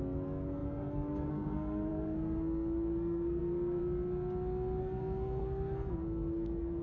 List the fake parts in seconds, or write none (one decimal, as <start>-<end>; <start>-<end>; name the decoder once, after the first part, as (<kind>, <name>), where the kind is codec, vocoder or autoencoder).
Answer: 0.0-3.8 (codec, SNAC); 4.8-6.8